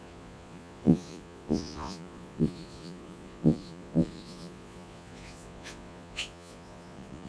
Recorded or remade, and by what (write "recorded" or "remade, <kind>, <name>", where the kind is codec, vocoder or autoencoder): remade, vocoder, Vocos